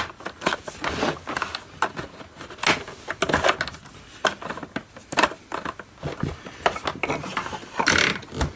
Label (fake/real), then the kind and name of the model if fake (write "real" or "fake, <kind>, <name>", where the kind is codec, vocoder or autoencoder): real